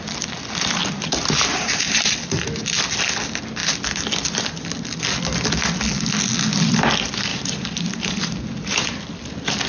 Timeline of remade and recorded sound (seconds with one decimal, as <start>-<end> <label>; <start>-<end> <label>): 0.0-0.8 recorded; 0.8-2.1 remade; 2.1-7.3 recorded; 7.3-9.0 remade; 9.0-9.7 recorded